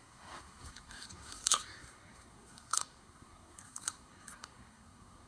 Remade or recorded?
remade